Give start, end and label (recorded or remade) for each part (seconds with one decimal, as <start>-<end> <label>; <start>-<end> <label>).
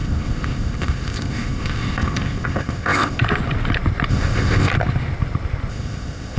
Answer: 0.0-3.2 remade; 3.2-4.1 recorded; 4.1-4.7 remade; 4.7-5.7 recorded; 5.7-6.4 remade